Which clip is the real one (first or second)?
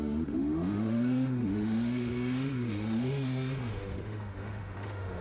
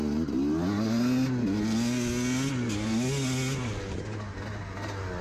second